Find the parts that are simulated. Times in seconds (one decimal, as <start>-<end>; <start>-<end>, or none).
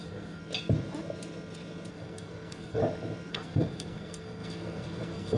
0.0-0.4; 1.9-2.8; 3.3-5.4